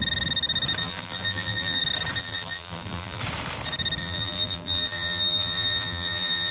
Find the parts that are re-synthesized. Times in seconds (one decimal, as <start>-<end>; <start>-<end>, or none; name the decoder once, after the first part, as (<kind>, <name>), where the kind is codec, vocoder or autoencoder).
0.8-1.8 (vocoder, BigVGAN v2); 2.2-3.2; 4.0-6.5